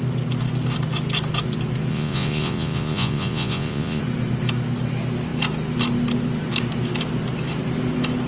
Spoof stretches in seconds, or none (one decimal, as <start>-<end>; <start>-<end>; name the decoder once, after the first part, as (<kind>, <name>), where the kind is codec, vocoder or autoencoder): 1.9-4.0 (vocoder, Vocos)